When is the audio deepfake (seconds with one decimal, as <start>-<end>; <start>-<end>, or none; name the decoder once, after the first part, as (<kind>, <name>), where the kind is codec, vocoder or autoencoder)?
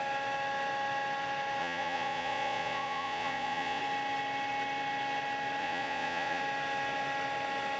1.6-3.8 (vocoder, Vocos); 5.6-6.4